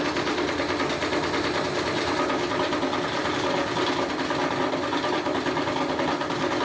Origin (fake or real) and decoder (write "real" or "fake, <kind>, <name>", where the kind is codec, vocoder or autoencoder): real